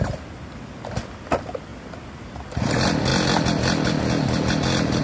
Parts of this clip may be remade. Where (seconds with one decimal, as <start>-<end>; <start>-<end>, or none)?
none